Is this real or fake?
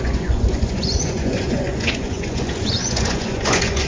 fake